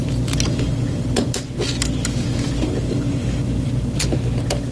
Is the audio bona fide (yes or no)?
yes